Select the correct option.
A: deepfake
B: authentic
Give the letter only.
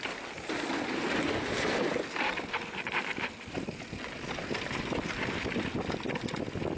B